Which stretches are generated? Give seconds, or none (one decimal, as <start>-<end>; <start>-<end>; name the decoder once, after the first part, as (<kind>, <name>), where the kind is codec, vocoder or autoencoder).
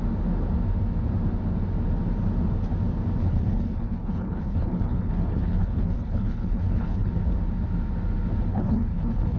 3.2-7.1 (codec, HILCodec); 8.5-9.4